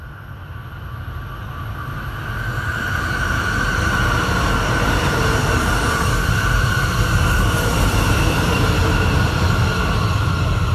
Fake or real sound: real